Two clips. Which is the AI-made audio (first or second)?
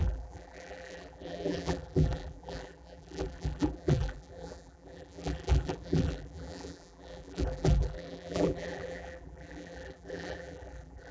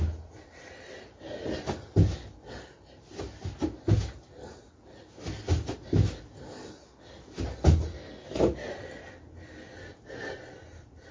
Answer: first